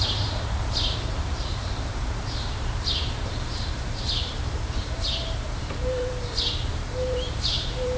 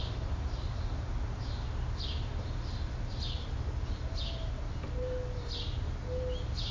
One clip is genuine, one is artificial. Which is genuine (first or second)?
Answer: second